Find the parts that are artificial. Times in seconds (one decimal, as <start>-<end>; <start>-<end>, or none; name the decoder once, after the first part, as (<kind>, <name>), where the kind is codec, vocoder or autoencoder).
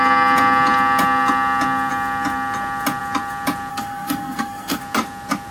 3.7-4.8 (codec, SNAC)